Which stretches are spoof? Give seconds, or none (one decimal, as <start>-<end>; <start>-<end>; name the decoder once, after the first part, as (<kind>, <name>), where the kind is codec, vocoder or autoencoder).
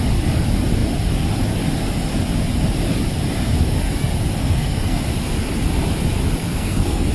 4.4-5.0 (codec, SNAC); 6.4-7.1